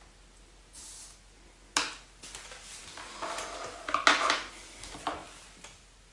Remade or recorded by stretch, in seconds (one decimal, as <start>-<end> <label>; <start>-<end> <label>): 0.0-6.1 recorded